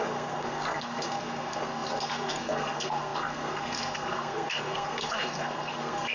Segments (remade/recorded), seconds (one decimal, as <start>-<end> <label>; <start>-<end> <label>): 0.0-6.1 remade